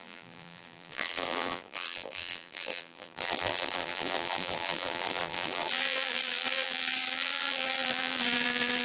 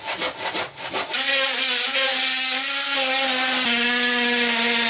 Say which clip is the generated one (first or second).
first